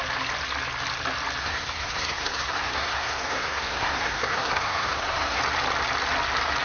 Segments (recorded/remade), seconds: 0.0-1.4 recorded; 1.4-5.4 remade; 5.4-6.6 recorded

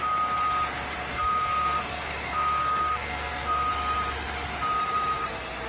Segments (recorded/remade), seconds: 0.0-1.1 recorded; 1.1-3.7 remade; 3.7-5.7 recorded

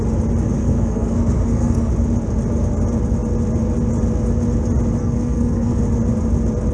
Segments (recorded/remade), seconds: 0.0-0.6 recorded; 0.6-1.9 remade; 1.9-5.0 recorded; 5.0-5.8 remade; 5.8-6.7 recorded

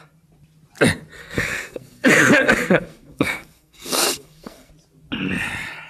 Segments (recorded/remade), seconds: 0.0-1.2 recorded; 1.2-4.7 remade; 4.7-5.9 recorded

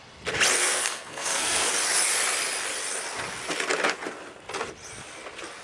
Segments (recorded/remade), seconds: 0.0-0.6 recorded; 0.6-1.7 remade; 1.7-5.6 recorded

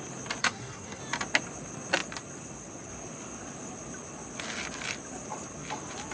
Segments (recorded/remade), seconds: 0.0-0.4 recorded; 0.4-1.0 remade; 1.0-6.1 recorded

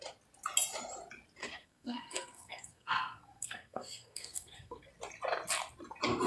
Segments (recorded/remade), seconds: 0.0-1.4 recorded; 1.4-4.9 remade; 4.9-6.3 recorded